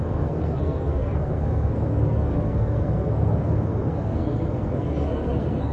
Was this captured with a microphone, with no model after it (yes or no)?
no